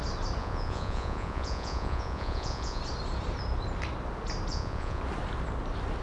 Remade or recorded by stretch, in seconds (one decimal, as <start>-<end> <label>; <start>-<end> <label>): 0.0-0.4 recorded; 0.4-2.8 remade; 2.8-4.5 recorded; 4.5-5.0 remade; 5.0-6.0 recorded